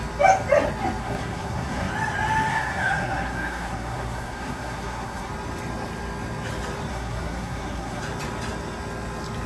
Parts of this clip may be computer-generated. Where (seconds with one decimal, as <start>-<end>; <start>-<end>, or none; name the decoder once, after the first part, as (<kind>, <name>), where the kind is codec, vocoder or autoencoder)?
1.0-1.9 (codec, SNAC); 2.5-5.3; 6.9-8.0